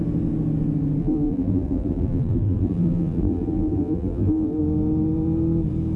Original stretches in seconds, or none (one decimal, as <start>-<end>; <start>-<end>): 0.0-1.0; 4.6-6.0